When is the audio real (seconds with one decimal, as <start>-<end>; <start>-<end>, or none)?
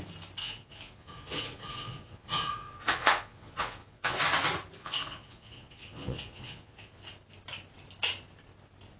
0.0-0.4; 4.2-4.8; 7.0-9.0